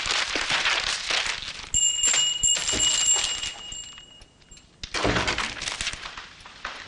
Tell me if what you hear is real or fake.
real